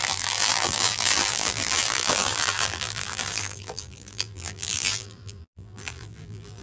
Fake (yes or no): yes